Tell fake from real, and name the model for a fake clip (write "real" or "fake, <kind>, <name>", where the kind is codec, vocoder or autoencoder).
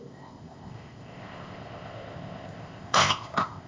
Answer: fake, codec, ZipCodec